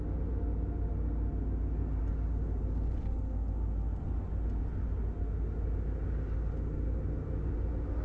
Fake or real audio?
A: real